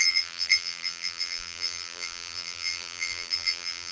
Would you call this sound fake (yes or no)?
yes